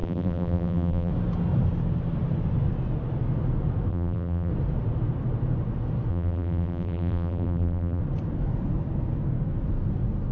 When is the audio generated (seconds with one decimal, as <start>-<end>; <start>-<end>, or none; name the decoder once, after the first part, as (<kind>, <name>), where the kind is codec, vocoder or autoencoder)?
0.0-1.1 (vocoder, BigVGAN v2); 3.9-4.5; 6.1-8.0